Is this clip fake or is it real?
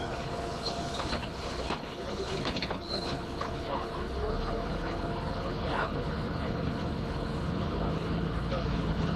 fake